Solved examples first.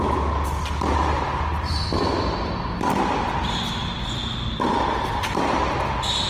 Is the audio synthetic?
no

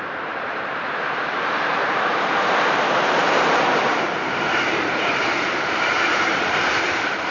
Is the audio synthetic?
yes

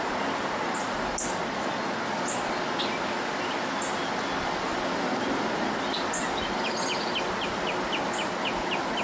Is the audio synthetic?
no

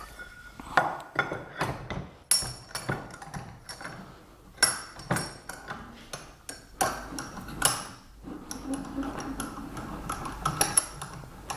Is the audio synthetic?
no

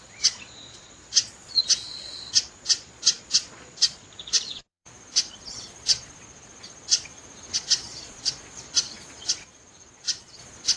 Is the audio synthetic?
yes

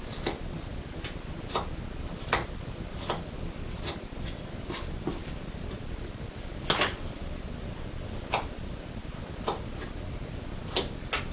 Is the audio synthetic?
no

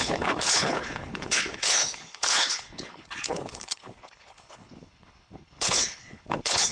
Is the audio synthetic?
yes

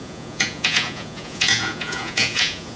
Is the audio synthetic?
yes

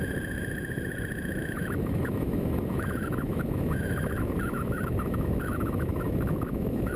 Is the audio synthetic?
yes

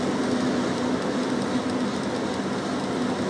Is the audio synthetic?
no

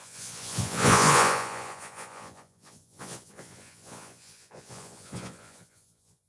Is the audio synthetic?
yes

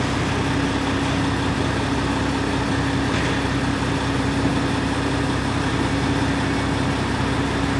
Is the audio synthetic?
no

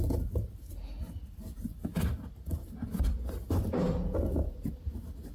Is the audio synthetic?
no